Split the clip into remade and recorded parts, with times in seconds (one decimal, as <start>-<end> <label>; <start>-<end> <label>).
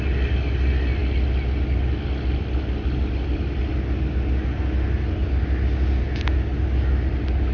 0.0-7.5 recorded